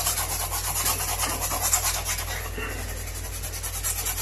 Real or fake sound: real